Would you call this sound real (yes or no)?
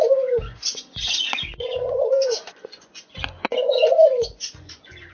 no